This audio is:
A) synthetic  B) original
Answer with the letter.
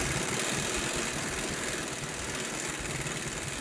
B